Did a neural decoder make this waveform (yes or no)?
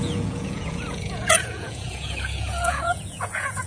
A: yes